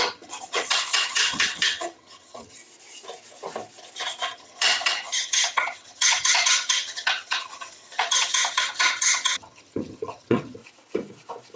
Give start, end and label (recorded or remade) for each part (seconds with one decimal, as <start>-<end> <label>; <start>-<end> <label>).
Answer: 0.0-2.6 remade; 2.6-4.2 recorded; 4.2-10.6 remade; 10.6-11.6 recorded